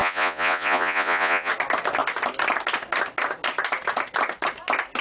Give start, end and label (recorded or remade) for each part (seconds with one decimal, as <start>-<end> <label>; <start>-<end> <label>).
0.0-1.5 remade; 1.5-5.0 recorded

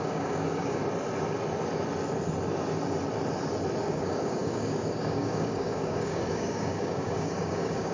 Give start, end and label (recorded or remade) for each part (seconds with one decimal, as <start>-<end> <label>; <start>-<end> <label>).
0.0-0.8 remade; 0.8-3.8 recorded; 3.8-7.9 remade

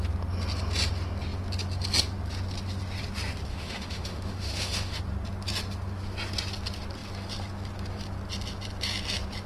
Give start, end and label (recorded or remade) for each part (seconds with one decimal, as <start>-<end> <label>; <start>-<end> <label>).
0.0-3.5 recorded; 3.5-5.0 remade; 5.0-9.5 recorded

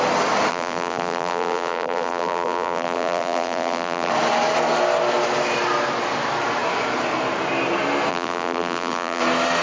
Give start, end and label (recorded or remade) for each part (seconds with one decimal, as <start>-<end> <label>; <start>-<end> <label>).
0.0-0.5 recorded; 0.5-4.1 remade; 4.1-8.1 recorded; 8.1-9.2 remade; 9.2-9.6 recorded

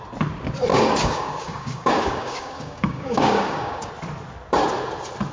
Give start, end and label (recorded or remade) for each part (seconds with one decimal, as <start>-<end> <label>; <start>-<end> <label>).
0.0-0.7 recorded; 0.7-3.9 remade; 3.9-5.3 recorded